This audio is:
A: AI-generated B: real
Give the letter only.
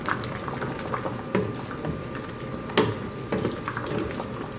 B